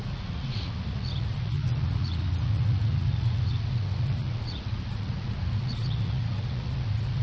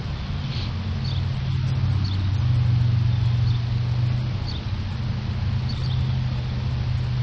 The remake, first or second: first